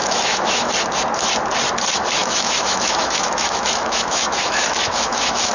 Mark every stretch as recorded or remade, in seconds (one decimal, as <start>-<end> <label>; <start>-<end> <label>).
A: 0.0-0.7 remade; 0.7-2.2 recorded; 2.2-5.5 remade